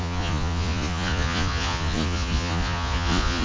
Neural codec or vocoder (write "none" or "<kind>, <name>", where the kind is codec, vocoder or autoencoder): vocoder, Vocos